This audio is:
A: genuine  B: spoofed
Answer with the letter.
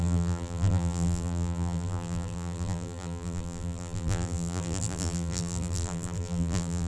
B